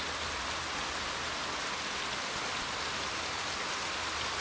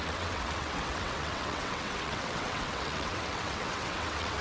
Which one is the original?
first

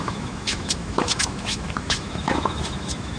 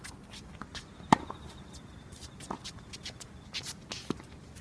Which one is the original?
second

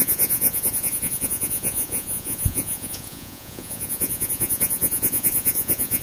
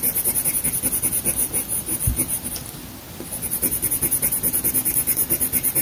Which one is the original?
second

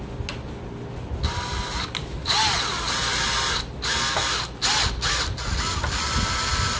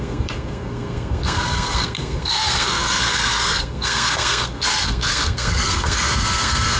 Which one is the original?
first